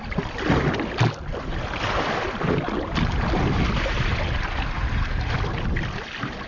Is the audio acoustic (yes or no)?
yes